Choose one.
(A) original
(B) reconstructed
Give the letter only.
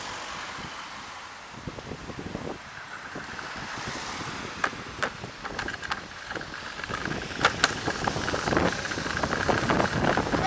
A